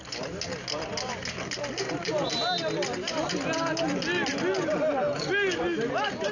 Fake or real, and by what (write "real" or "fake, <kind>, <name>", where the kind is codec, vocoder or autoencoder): real